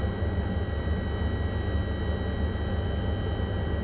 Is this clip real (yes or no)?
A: yes